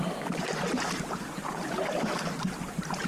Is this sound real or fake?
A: fake